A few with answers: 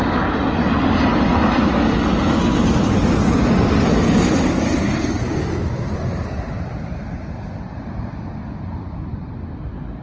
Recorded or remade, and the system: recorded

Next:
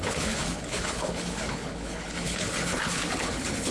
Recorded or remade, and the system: remade, codec, HILCodec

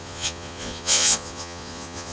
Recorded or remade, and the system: remade, vocoder, Vocos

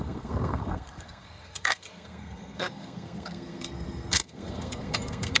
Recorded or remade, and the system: remade, codec, SNAC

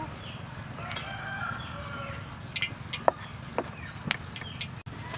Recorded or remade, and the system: recorded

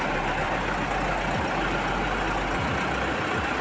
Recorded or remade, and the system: recorded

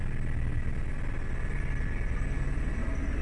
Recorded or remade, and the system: recorded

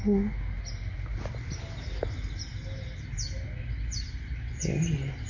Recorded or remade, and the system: recorded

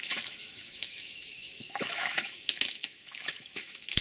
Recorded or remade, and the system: remade, autoencoder, DAC-VAE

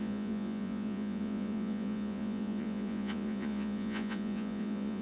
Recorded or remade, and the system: remade, vocoder, Vocos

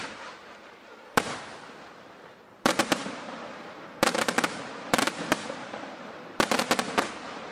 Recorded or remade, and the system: remade, vocoder, BigVGAN v2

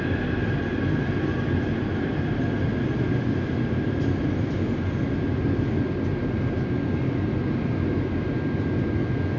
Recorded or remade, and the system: recorded